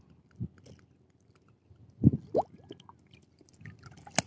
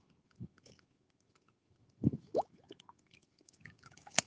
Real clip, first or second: first